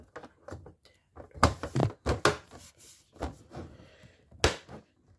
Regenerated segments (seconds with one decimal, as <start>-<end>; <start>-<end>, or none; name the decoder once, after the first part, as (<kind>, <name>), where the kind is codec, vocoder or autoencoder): none